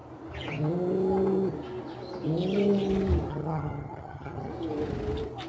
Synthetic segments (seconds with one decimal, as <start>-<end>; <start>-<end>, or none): 3.3-4.5